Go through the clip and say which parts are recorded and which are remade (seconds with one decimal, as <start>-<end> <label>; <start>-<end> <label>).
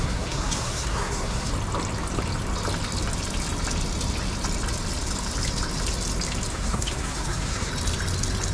0.0-1.5 remade; 1.5-6.5 recorded; 6.5-7.7 remade; 7.7-8.5 recorded